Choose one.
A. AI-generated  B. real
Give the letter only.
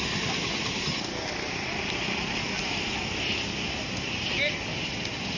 B